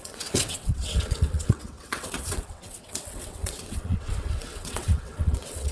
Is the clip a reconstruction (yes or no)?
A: yes